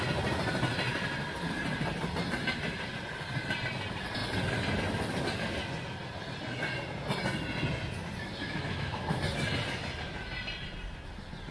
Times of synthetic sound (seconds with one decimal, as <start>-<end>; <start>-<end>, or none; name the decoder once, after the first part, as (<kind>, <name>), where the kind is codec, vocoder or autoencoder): 8.4-9.2 (autoencoder, DAC-VAE)